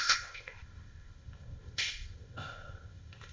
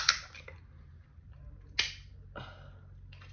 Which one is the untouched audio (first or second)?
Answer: second